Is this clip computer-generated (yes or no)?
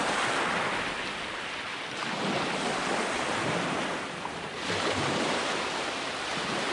no